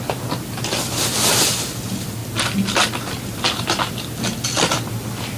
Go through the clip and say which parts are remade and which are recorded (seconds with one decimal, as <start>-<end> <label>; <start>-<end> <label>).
0.0-5.4 recorded